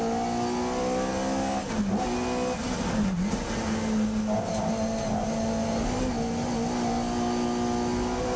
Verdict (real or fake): real